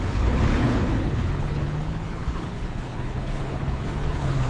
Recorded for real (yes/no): no